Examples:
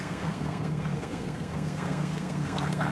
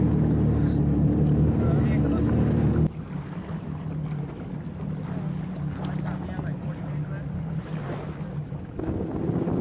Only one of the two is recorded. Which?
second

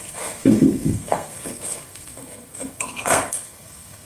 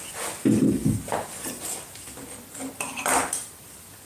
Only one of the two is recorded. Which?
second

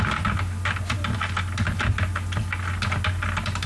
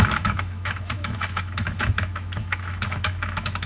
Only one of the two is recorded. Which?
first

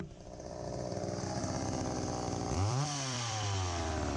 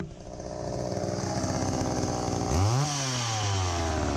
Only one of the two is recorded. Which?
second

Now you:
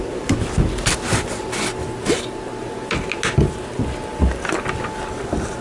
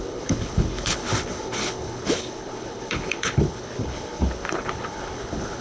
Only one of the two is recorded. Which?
first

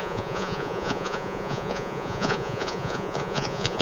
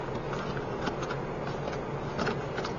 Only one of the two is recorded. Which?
second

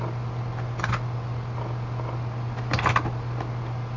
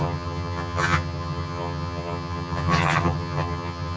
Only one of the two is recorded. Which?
first